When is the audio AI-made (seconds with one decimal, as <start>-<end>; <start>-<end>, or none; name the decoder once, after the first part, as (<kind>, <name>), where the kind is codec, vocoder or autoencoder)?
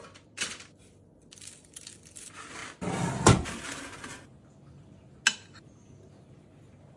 0.0-2.6 (vocoder, BigVGAN v2)